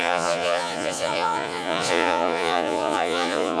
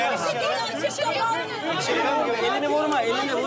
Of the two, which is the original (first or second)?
second